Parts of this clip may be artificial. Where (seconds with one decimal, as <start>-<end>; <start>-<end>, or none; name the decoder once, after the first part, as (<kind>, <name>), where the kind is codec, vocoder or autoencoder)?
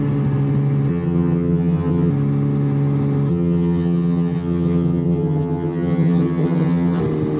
0.9-2.1 (vocoder, HiFi-GAN); 3.3-7.0